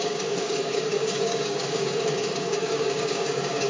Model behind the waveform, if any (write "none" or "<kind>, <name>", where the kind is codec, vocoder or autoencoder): codec, DAC